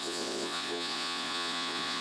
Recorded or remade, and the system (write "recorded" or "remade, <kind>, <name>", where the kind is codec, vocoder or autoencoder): remade, vocoder, Vocos